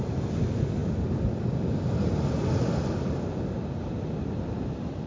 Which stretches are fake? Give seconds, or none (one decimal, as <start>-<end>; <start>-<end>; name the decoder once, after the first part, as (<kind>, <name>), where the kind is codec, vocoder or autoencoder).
none